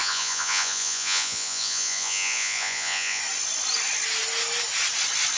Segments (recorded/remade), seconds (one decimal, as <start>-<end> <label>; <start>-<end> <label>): 0.0-3.2 remade; 3.2-5.4 recorded